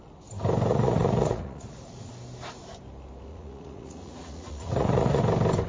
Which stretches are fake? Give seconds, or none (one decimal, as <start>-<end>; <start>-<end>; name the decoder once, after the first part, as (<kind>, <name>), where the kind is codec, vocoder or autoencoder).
0.7-2.1 (vocoder, Vocos); 3.3-5.2